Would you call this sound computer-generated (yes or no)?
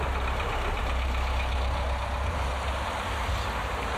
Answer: no